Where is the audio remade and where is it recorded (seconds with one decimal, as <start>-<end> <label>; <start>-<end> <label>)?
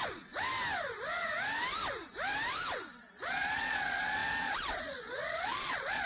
0.0-0.5 remade; 0.5-3.0 recorded; 3.0-6.1 remade